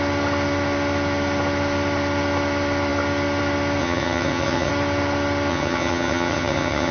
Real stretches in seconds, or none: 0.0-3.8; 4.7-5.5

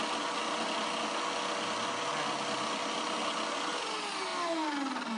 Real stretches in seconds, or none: 0.0-5.2